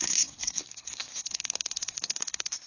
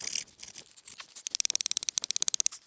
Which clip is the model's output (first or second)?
first